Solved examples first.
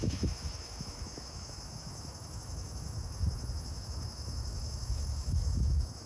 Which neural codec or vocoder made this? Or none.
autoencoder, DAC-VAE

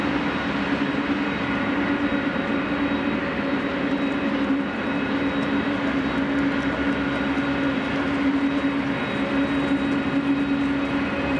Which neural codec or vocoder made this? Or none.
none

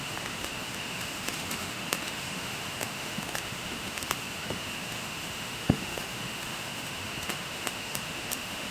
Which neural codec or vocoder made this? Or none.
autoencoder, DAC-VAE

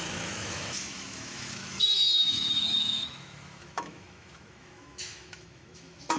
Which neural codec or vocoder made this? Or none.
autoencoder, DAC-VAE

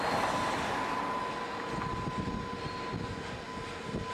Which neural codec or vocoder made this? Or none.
none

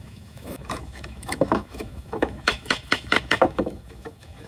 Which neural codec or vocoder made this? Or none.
autoencoder, DAC-VAE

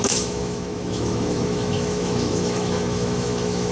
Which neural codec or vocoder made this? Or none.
autoencoder, DAC-VAE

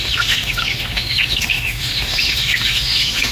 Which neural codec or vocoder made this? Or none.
autoencoder, DAC-VAE